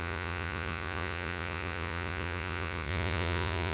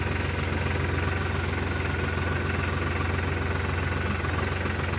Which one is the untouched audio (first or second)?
second